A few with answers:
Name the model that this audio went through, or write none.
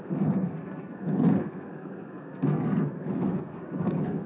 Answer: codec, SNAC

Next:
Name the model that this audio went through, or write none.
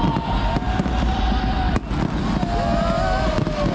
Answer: none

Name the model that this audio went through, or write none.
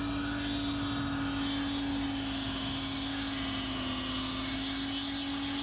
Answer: none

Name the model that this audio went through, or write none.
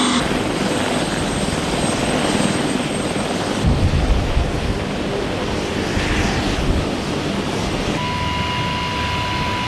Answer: none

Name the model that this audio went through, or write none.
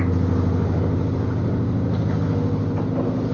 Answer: none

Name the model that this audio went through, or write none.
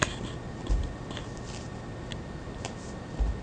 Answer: none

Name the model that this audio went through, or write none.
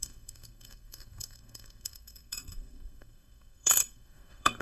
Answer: codec, SNAC